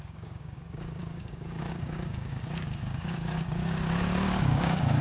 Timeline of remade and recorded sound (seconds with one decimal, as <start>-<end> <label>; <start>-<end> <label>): 0.0-5.0 remade